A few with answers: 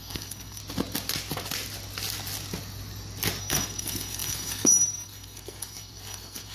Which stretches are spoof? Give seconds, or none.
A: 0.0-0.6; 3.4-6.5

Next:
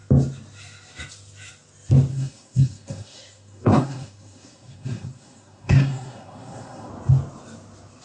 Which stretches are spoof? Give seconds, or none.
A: 2.1-6.9

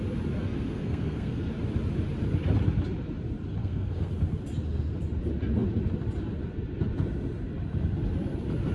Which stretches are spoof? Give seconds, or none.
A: 0.4-1.5; 3.6-4.1

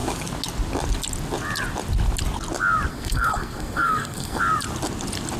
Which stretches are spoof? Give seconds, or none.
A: 2.9-4.4

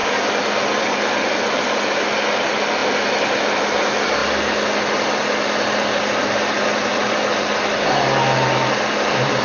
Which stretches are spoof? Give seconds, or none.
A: none

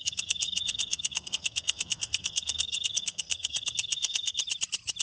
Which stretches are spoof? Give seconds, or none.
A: 0.0-4.4

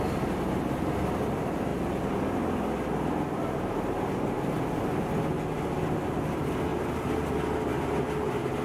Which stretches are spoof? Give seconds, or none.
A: none

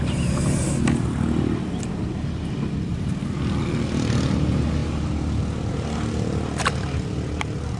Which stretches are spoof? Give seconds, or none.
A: none